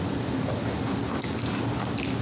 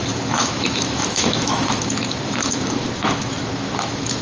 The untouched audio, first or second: first